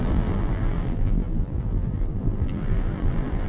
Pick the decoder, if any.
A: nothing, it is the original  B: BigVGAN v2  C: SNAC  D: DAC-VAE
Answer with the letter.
B